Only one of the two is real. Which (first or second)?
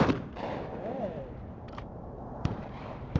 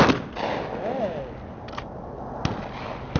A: second